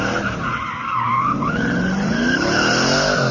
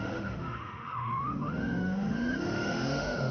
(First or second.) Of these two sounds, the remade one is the second